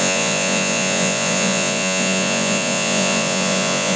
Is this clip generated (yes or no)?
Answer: yes